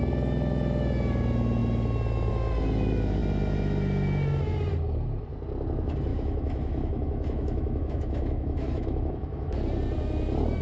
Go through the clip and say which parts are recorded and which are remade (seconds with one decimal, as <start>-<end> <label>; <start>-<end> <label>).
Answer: 0.0-6.1 recorded; 6.1-9.6 remade; 9.6-10.6 recorded